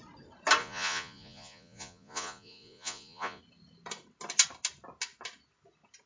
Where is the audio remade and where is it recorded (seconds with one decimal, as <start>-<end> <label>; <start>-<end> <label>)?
0.0-0.6 recorded; 0.6-3.4 remade; 3.4-6.1 recorded